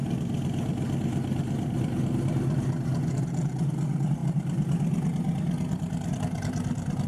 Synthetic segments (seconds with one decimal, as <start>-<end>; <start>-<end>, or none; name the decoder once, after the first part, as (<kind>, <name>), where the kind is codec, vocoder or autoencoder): 3.2-4.2 (vocoder, BigVGAN v2); 6.1-7.1

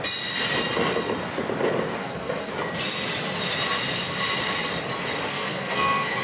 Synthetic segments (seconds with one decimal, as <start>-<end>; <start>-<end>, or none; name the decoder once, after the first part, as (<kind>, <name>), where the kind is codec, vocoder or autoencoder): 2.0-2.5 (codec, SNAC); 5.3-6.2

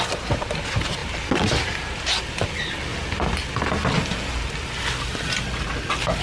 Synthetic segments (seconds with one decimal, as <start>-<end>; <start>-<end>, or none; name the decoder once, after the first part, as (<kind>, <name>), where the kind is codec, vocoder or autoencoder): none

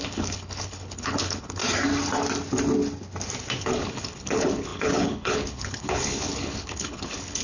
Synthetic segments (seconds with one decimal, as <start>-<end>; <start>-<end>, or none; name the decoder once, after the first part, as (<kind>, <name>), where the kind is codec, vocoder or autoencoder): 0.0-1.6 (codec, HILCodec); 3.6-7.4